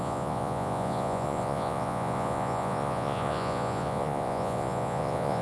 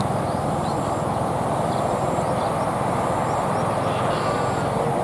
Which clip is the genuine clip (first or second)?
second